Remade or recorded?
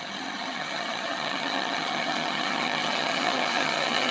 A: remade